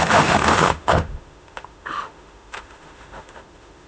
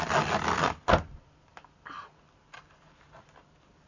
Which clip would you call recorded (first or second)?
second